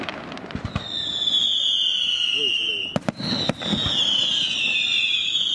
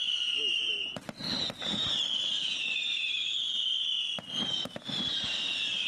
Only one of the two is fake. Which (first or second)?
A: second